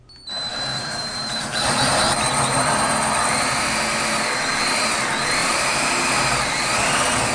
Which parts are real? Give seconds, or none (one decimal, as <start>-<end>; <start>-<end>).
0.0-0.5; 2.8-5.4; 6.7-7.3